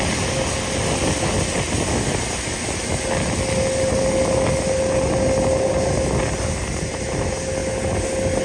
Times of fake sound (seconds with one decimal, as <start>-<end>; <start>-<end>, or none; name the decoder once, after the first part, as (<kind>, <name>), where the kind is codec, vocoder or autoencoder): none